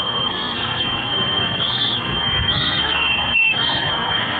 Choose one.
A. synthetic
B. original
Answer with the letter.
A